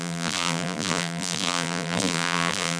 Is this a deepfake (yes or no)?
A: yes